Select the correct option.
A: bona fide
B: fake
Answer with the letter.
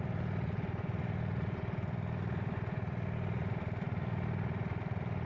A